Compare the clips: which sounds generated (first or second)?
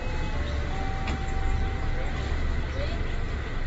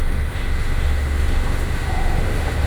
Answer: second